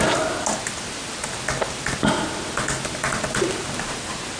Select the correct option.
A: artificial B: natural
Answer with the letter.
B